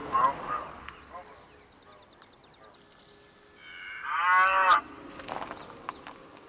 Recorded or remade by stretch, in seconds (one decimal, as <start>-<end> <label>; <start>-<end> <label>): 0.0-6.5 recorded